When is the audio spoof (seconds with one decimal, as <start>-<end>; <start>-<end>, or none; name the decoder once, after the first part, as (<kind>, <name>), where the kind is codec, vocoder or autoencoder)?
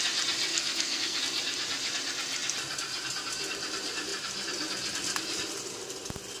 0.5-1.2 (codec, SNAC)